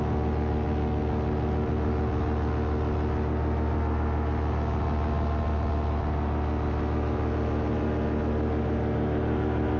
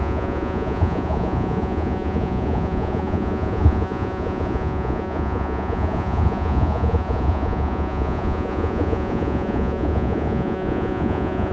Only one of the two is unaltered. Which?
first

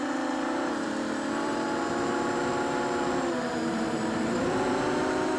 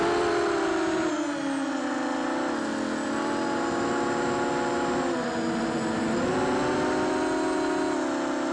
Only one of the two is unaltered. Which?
second